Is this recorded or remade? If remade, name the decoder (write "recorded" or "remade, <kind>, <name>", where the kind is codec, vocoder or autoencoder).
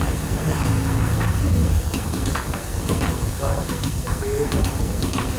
remade, codec, SNAC